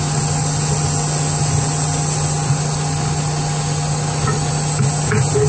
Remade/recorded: recorded